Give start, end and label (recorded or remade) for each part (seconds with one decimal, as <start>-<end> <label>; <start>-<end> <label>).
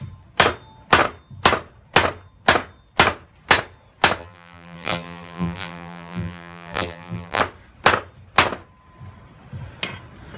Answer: 0.0-4.2 recorded; 4.2-7.4 remade; 7.4-10.4 recorded